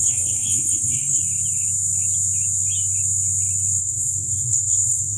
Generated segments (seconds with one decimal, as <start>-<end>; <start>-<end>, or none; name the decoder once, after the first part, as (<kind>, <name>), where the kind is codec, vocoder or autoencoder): 0.0-1.2 (codec, SNAC); 3.8-5.2